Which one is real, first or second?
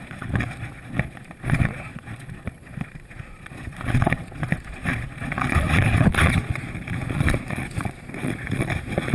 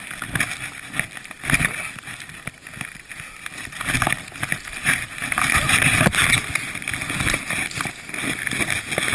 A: second